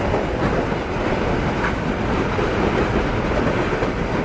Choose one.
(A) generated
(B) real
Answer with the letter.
B